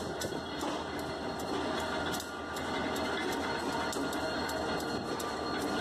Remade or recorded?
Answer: recorded